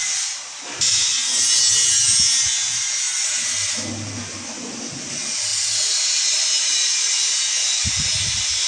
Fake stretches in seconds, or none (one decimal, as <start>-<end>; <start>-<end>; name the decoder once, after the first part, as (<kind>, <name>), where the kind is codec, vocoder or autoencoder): none